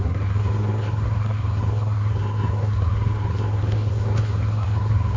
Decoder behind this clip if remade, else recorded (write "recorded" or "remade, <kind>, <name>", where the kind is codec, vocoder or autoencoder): remade, codec, SNAC